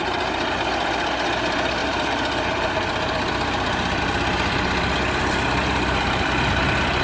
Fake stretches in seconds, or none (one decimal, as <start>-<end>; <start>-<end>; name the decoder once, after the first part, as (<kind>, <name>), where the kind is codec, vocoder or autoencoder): none